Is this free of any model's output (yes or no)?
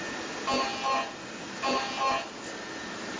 yes